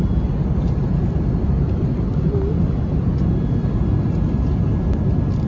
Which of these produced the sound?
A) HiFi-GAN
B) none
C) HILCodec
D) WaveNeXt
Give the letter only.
B